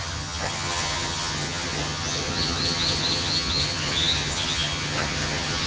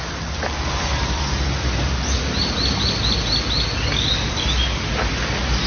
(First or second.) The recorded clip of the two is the second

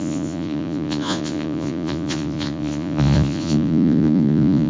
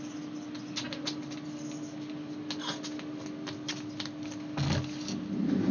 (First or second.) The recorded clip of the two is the second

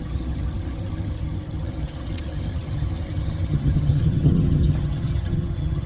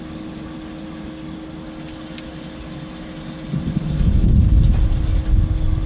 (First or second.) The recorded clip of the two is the second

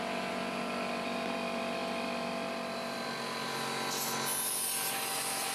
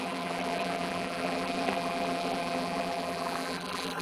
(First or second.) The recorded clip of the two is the first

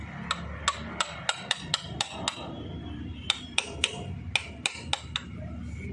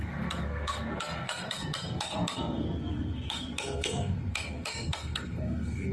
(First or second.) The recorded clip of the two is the first